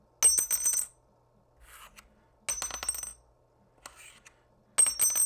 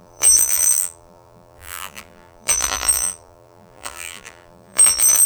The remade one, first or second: second